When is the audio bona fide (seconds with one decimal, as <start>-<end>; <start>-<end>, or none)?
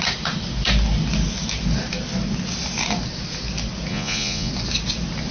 0.0-3.9; 4.5-5.3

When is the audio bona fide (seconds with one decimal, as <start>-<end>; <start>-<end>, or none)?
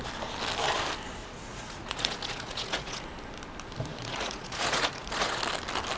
0.0-1.2; 3.0-3.9; 5.4-6.0